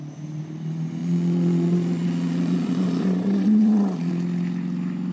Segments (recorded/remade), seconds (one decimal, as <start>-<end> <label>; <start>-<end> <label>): 0.0-1.0 recorded; 1.0-4.1 remade; 4.1-5.1 recorded